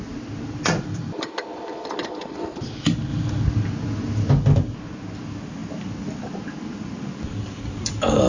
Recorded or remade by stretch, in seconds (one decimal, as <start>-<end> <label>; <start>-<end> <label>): 0.0-8.3 recorded

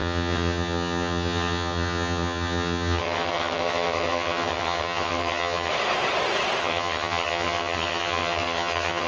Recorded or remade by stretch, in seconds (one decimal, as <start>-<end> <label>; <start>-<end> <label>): 0.0-5.7 remade; 5.7-6.6 recorded; 6.6-9.1 remade